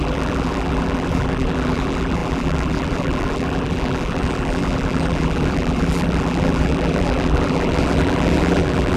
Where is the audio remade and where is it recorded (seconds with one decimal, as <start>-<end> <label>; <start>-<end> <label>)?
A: 0.0-9.0 remade

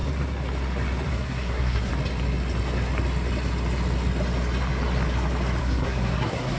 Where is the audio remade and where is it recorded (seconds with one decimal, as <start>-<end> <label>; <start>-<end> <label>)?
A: 0.0-1.1 recorded; 1.1-1.9 remade; 1.9-5.6 recorded; 5.6-6.6 remade

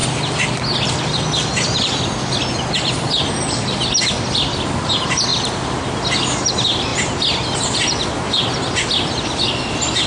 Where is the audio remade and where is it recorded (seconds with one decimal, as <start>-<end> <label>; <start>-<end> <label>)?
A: 0.0-10.1 recorded